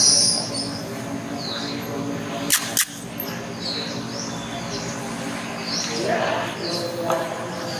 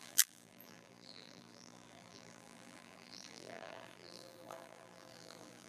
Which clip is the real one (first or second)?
first